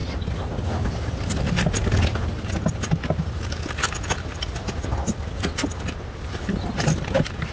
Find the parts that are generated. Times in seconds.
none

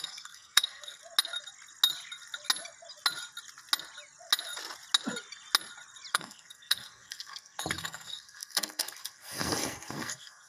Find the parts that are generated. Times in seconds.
0.0-1.0 (codec, SNAC); 6.1-10.5